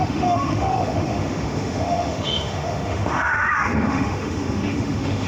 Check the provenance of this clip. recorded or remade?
remade